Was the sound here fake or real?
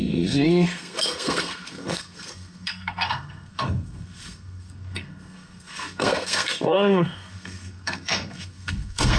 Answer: fake